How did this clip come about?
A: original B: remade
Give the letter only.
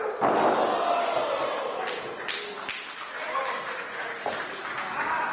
A